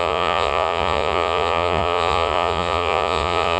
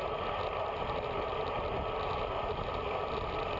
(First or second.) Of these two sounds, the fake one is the first